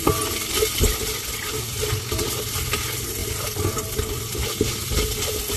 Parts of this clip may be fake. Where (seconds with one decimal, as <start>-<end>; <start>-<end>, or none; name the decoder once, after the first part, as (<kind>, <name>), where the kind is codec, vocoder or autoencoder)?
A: none